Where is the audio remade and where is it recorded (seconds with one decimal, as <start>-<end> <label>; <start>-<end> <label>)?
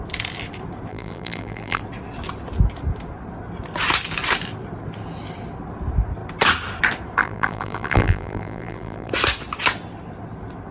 0.0-0.9 recorded; 0.9-1.8 remade; 1.8-7.2 recorded; 7.2-9.1 remade; 9.1-10.7 recorded